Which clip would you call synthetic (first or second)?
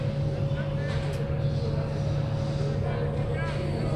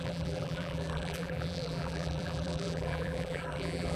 second